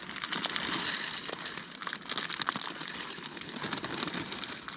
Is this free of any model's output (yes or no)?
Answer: yes